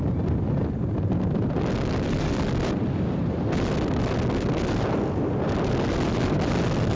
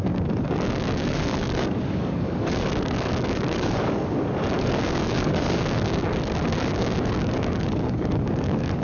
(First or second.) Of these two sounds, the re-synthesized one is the second